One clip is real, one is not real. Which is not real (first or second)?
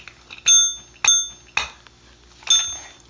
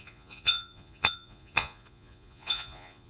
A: second